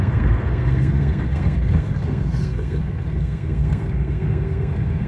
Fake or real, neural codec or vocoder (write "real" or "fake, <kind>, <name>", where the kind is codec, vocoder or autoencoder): fake, codec, SNAC